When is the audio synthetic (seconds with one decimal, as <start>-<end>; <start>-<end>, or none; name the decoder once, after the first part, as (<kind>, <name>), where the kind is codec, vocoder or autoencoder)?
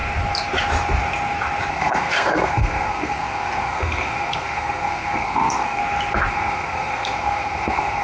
1.7-5.8 (codec, SNAC); 6.3-8.0